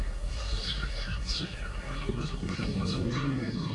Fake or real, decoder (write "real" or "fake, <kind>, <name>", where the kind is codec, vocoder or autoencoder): fake, codec, SNAC